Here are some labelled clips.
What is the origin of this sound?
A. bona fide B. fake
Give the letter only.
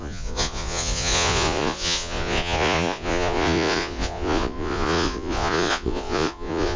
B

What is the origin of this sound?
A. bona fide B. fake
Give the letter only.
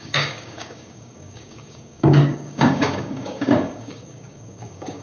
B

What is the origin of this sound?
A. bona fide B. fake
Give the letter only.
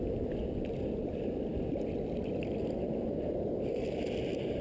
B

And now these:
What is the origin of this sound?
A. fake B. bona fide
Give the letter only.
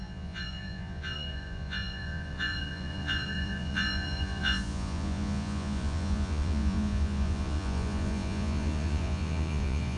A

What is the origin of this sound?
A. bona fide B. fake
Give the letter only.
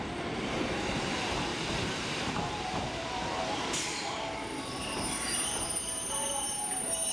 B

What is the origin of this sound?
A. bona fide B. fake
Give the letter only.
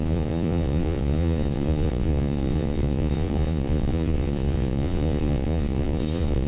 B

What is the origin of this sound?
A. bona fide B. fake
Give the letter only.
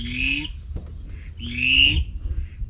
A